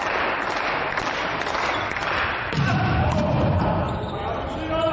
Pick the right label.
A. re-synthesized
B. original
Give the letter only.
B